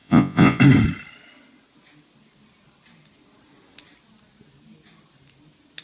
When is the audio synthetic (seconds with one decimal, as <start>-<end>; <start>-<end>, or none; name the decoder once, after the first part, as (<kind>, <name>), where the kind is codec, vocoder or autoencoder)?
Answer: 0.0-0.6 (vocoder, Vocos)